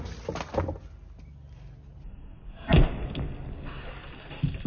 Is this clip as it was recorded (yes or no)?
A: yes